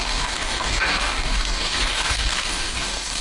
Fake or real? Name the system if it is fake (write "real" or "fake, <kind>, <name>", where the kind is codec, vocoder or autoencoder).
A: fake, codec, DAC